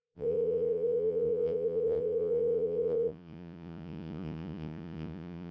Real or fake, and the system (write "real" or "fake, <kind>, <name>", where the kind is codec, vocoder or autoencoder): fake, vocoder, Vocos